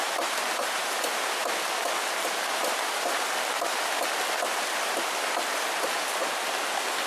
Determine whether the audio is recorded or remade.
recorded